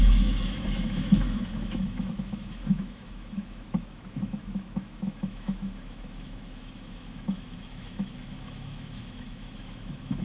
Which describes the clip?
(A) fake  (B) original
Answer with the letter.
A